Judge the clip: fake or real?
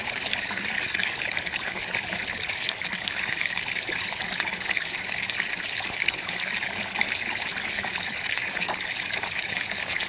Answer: fake